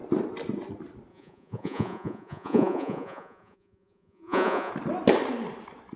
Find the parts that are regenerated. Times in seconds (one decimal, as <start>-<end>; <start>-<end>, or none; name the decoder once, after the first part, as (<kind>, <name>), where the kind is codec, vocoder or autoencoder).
1.1-4.7 (vocoder, Vocos)